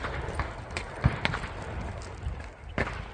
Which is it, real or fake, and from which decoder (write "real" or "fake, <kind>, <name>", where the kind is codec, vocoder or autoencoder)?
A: real